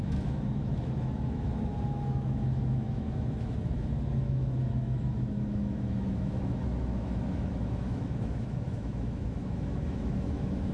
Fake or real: fake